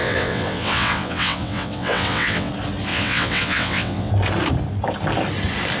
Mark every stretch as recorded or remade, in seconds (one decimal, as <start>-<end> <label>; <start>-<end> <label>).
0.0-2.5 remade; 2.5-2.9 recorded; 2.9-4.1 remade; 4.1-5.8 recorded

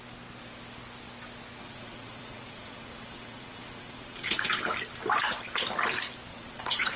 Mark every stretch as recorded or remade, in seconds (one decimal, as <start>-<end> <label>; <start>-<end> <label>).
0.0-1.6 recorded; 1.6-4.5 remade; 4.5-6.3 recorded; 6.3-7.0 remade

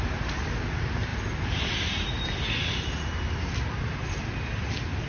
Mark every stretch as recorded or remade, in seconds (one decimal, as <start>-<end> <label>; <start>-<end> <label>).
0.0-5.1 recorded

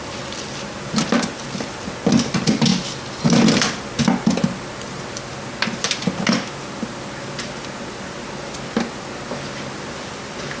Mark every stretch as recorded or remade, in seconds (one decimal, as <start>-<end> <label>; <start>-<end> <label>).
0.0-10.6 recorded

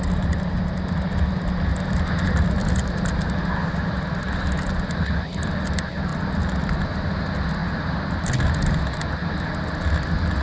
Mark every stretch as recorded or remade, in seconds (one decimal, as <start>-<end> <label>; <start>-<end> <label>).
0.0-10.4 recorded

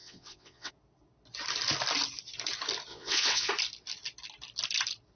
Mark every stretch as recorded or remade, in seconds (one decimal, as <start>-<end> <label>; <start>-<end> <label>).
0.0-0.7 remade; 0.7-2.9 recorded; 2.9-3.5 remade; 3.5-5.2 recorded

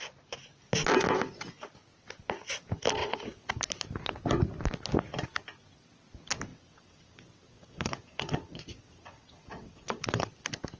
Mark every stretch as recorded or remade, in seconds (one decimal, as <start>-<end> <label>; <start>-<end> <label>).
0.0-3.0 recorded; 3.0-3.5 remade; 3.5-6.5 recorded; 6.5-10.3 remade; 10.3-10.8 recorded